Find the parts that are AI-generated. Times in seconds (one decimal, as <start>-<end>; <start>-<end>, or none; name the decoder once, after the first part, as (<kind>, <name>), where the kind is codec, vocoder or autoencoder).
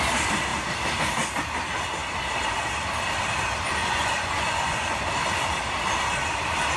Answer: 3.8-5.0 (vocoder, Vocos)